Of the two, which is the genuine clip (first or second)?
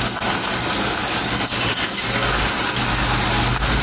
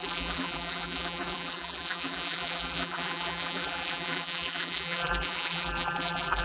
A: first